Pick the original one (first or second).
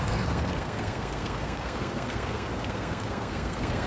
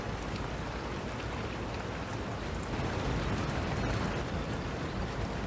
second